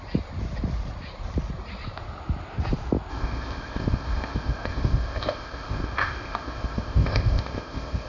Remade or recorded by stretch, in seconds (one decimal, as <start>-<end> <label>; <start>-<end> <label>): 0.0-3.1 recorded; 3.1-8.1 remade